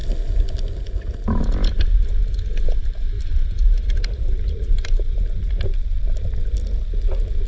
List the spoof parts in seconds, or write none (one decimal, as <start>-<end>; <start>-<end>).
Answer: 2.8-5.8